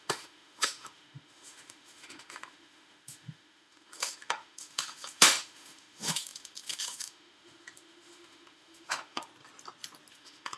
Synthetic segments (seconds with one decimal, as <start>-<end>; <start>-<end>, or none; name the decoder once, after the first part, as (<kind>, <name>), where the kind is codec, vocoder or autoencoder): 0.0-9.3 (autoencoder, DAC-VAE); 10.1-10.6